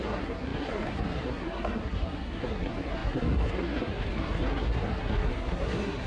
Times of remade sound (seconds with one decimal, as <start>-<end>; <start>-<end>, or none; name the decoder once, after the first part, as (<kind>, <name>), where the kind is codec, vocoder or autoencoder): 0.0-6.1 (codec, SNAC)